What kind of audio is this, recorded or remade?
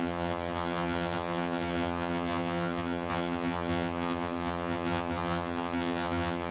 remade